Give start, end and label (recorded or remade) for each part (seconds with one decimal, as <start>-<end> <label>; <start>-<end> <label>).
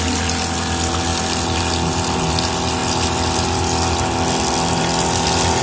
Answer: 0.0-5.6 recorded